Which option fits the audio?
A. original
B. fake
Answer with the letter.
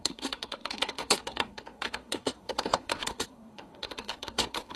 B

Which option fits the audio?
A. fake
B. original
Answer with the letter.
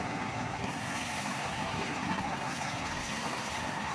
A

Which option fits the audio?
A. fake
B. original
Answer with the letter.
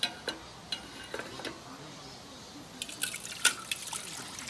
B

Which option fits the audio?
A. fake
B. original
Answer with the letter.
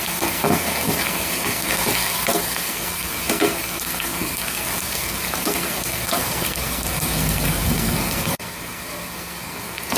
A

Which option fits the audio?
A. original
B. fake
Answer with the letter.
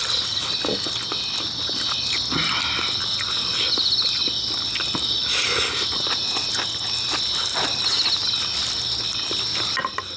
A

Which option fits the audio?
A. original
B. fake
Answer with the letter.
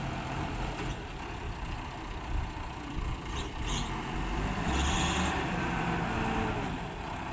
B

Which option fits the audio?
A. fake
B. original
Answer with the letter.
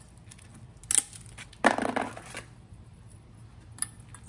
B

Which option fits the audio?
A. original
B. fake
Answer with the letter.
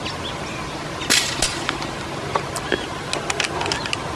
A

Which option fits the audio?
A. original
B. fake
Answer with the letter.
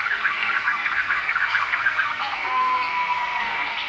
B